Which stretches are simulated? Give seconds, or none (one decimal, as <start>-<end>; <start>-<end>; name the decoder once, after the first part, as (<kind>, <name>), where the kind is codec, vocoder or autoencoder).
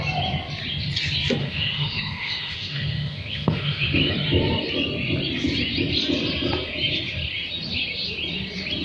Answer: 1.4-4.1 (autoencoder, DAC-VAE)